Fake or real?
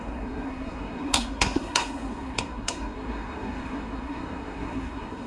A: fake